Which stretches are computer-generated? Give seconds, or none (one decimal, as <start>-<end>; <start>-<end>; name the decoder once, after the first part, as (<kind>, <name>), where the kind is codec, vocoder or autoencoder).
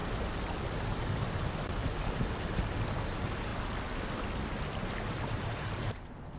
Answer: 0.8-1.8 (vocoder, BigVGAN v2); 3.0-3.5; 5.4-6.4